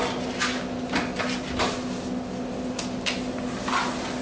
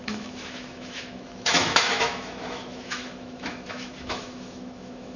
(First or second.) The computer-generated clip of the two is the second